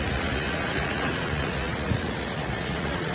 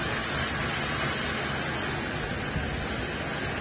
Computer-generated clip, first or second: first